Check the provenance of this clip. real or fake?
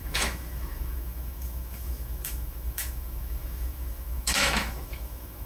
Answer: fake